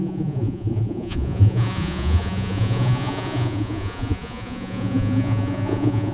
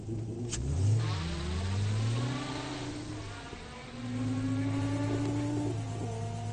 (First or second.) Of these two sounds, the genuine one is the second